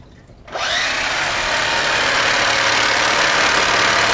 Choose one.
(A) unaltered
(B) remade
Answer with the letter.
A